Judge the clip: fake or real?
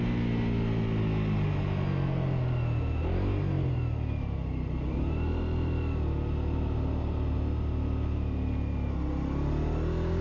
real